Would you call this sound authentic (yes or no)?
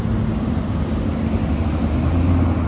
yes